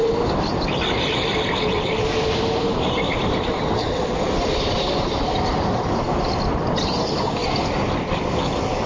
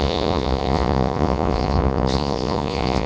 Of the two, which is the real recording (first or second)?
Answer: first